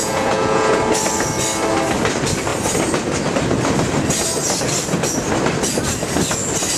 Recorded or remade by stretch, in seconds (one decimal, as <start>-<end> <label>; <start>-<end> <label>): 0.0-0.8 remade; 0.8-6.8 recorded